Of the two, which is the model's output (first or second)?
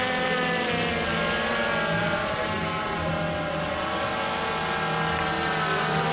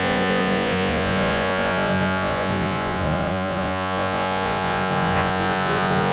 second